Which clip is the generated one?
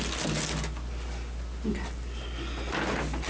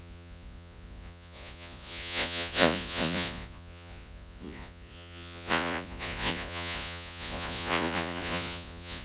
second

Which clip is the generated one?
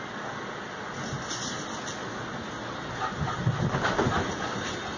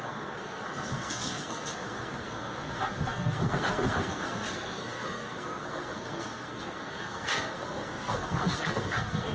second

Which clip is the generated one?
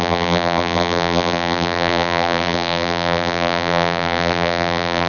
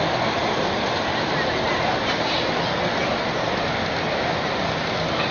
first